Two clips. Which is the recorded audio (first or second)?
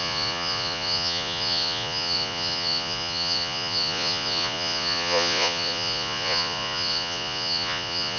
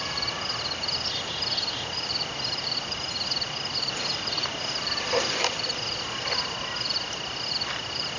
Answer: second